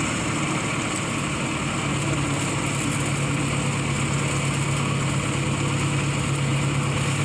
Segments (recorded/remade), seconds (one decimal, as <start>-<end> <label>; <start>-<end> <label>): 0.0-7.2 recorded